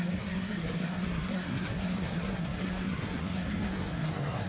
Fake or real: fake